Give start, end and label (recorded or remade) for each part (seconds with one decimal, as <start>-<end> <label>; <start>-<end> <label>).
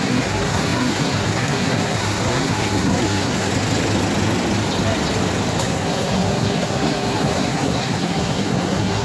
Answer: 0.0-3.5 remade; 3.5-5.6 recorded; 5.6-9.0 remade